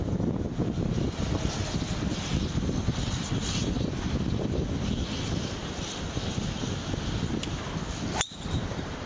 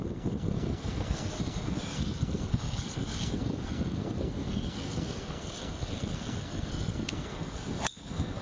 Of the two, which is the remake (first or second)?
second